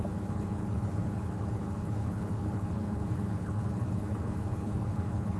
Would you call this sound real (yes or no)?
no